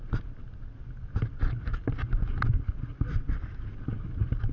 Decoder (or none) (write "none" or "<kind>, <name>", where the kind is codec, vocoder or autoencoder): none